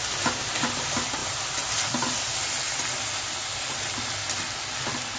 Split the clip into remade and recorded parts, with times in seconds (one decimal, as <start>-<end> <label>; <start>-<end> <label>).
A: 0.0-1.2 recorded; 1.2-4.3 remade; 4.3-5.2 recorded